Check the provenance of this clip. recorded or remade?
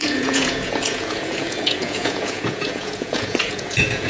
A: remade